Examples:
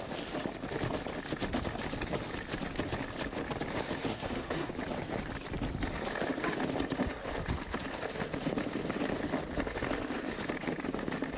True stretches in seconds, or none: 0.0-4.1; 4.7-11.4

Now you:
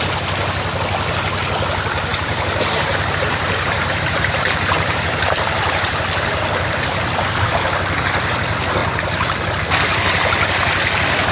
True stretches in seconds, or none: 0.0-2.1; 6.0-11.3